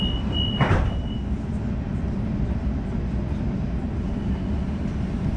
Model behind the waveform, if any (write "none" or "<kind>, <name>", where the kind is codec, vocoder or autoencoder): none